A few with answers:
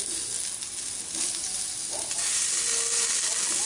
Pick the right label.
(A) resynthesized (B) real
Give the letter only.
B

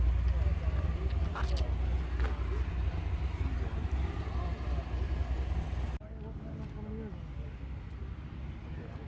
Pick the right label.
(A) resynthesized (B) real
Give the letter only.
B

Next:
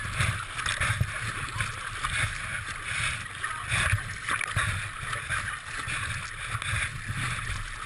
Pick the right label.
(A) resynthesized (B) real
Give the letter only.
B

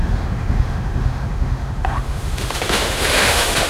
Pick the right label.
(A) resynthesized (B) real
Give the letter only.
A